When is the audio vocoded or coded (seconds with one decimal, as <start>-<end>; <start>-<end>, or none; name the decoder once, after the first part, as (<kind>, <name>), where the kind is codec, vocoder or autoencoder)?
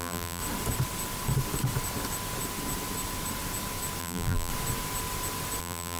0.0-0.4 (vocoder, BigVGAN v2); 4.0-4.5; 5.6-6.0